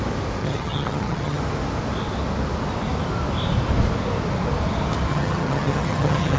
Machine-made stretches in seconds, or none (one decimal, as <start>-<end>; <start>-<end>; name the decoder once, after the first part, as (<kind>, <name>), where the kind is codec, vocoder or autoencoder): 0.4-1.4 (vocoder, HiFi-GAN); 5.1-6.4